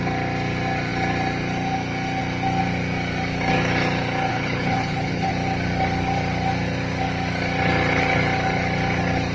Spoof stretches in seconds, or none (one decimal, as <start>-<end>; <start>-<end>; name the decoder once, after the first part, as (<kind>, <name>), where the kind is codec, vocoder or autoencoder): 4.3-5.3 (codec, HILCodec)